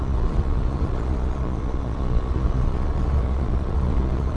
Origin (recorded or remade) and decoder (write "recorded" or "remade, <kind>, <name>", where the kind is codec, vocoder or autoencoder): remade, vocoder, Vocos